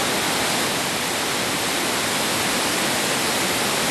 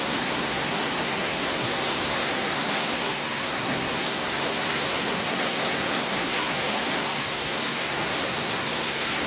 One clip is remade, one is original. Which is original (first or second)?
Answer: first